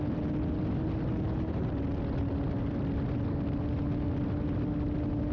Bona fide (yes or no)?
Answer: yes